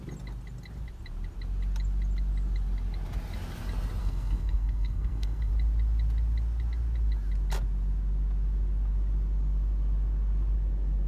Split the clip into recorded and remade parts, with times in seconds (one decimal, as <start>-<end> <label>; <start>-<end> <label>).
0.0-4.0 recorded; 4.0-5.5 remade; 5.5-11.1 recorded